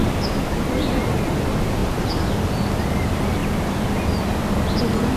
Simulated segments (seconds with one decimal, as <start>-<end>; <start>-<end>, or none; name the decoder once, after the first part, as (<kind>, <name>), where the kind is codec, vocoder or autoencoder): none